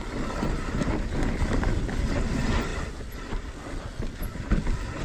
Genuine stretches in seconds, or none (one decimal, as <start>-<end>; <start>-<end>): 0.0-5.0